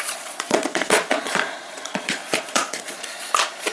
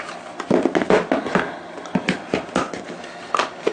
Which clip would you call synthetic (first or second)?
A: first